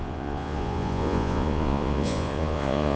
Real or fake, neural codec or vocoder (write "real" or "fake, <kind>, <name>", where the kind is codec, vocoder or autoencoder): fake, vocoder, Vocos